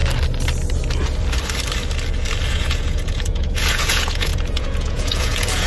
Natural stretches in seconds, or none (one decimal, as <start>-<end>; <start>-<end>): 0.0-2.5